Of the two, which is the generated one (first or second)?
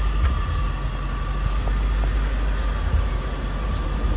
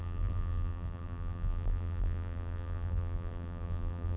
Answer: second